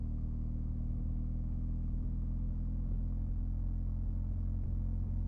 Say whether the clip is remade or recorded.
recorded